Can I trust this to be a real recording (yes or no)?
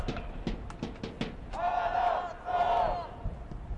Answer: yes